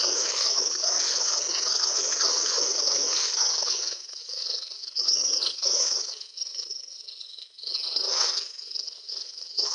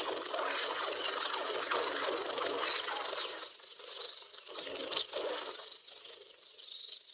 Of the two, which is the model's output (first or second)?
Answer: first